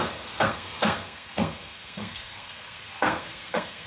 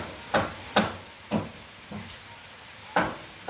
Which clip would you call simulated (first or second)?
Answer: first